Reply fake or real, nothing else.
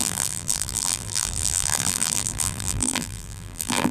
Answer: fake